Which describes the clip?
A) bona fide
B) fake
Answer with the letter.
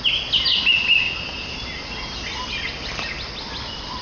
A